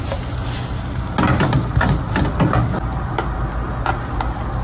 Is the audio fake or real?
real